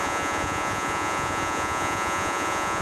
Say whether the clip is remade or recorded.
remade